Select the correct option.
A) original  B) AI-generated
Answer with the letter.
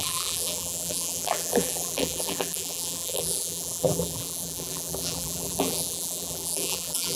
B